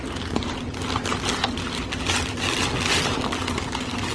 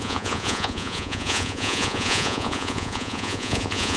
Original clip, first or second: first